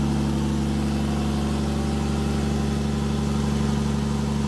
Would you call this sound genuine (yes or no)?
yes